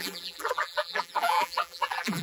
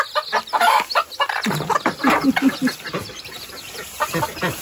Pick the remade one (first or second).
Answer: first